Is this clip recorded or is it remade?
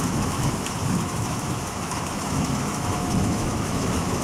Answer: remade